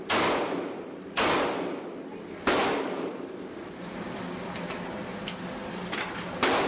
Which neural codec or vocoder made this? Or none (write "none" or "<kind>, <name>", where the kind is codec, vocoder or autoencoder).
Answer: none